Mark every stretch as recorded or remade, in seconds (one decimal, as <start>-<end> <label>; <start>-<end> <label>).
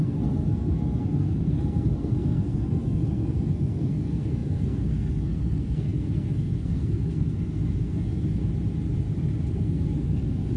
0.0-8.4 remade; 8.4-9.5 recorded; 9.5-10.6 remade